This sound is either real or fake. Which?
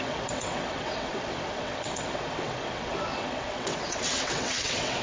fake